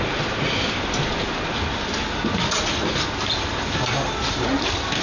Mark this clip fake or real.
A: real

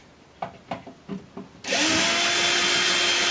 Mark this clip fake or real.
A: real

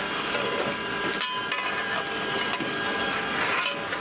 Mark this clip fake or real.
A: real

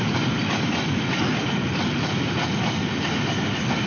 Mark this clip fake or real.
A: real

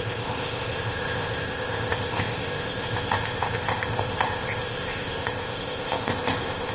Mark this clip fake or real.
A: fake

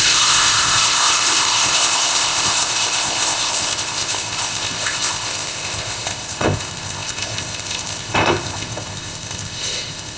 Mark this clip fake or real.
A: fake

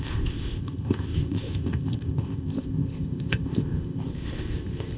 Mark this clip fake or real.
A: fake